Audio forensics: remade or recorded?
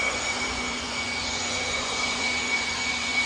remade